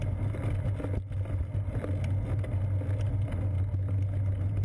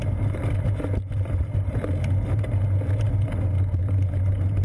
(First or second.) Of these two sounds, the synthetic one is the second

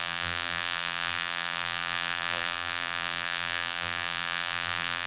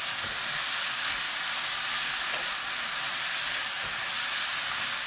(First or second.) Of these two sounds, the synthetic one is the first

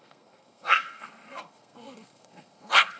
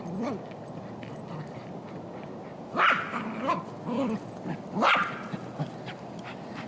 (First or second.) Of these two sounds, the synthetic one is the first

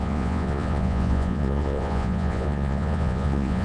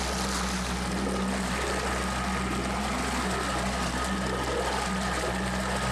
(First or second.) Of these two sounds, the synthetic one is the first